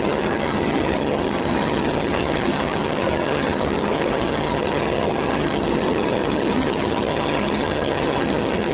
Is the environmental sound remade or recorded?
remade